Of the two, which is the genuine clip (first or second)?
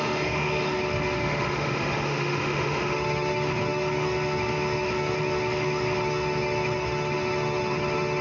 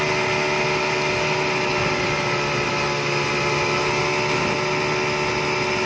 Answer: second